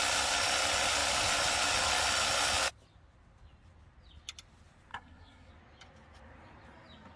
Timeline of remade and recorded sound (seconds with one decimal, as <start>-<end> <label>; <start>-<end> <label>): 0.0-4.9 recorded; 4.9-5.5 remade; 5.5-7.2 recorded